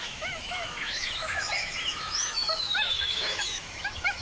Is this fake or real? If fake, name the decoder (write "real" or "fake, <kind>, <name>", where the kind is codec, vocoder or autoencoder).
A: fake, autoencoder, DAC-VAE